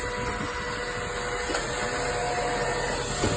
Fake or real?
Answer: real